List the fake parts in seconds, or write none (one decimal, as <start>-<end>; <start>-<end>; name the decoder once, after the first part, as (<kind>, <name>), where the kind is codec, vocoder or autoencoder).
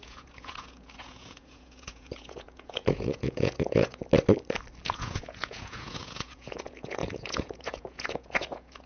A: 0.0-4.0 (vocoder, Vocos); 4.8-8.9